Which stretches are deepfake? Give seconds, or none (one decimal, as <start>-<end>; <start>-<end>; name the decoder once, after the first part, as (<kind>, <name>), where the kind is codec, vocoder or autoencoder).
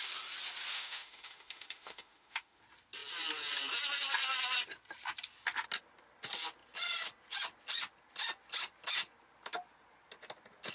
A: 0.7-2.6 (autoencoder, DAC-VAE)